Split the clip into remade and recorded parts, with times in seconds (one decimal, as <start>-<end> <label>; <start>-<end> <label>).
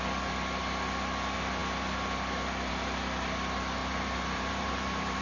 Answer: 0.0-3.8 recorded; 3.8-5.2 remade